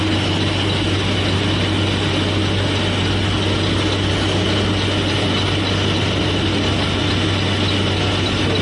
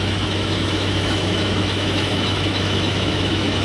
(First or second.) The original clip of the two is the first